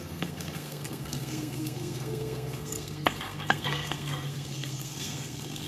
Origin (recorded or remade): remade